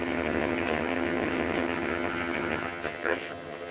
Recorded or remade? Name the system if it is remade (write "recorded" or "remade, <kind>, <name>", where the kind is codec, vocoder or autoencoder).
remade, vocoder, HiFi-GAN